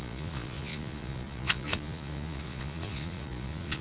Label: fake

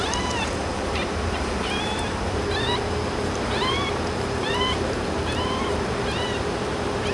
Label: fake